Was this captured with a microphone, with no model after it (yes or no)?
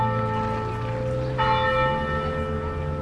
yes